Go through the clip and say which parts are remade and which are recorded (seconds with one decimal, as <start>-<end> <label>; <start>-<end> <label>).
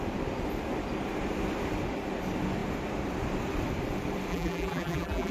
0.0-4.3 recorded; 4.3-5.3 remade